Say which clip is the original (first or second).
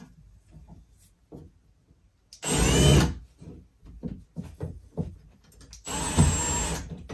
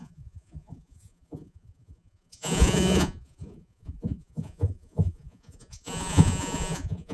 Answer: first